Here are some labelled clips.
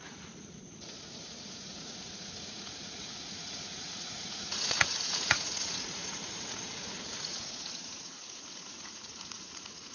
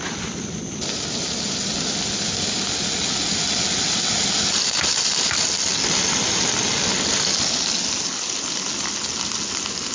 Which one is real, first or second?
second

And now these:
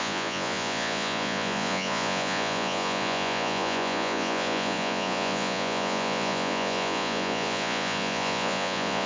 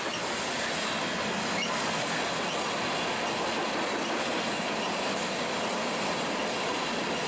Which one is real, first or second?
second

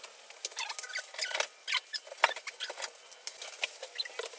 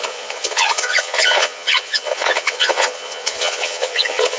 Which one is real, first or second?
first